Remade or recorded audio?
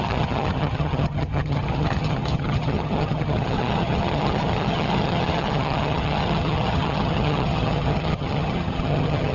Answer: remade